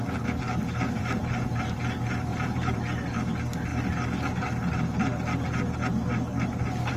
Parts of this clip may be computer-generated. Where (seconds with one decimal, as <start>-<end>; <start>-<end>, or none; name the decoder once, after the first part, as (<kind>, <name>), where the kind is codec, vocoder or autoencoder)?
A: 1.0-1.8 (vocoder, BigVGAN v2); 2.3-2.8